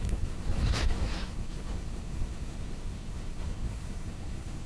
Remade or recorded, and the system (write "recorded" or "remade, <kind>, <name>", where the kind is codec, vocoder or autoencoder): remade, codec, SNAC